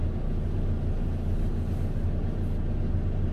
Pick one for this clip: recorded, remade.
recorded